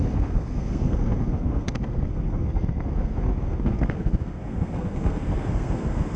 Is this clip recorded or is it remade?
remade